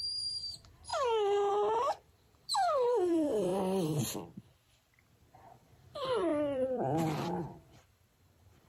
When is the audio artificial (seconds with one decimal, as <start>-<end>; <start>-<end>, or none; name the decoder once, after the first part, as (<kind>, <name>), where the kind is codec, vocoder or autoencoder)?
0.0-0.9 (vocoder, BigVGAN v2); 1.5-3.5; 5.3-8.7